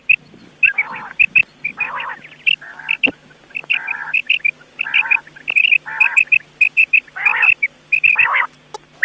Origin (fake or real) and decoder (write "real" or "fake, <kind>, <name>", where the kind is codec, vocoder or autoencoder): real